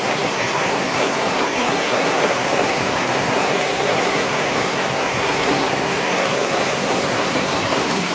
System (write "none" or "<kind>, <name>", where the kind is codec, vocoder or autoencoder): codec, SNAC